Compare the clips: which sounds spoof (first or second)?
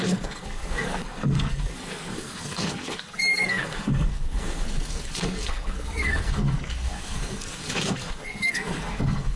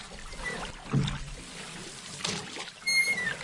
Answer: first